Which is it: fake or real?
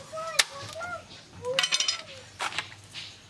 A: real